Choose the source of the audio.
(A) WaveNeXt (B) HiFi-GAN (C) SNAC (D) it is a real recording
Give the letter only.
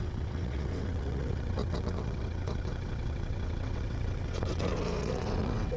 A